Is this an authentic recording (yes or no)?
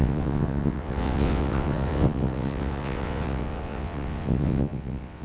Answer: no